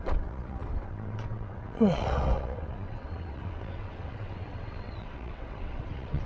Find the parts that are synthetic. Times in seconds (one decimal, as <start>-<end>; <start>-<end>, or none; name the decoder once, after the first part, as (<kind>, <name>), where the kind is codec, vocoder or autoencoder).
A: 0.0-6.3 (vocoder, WaveNeXt)